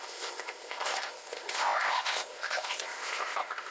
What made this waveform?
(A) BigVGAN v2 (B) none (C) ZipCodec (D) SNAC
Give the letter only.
C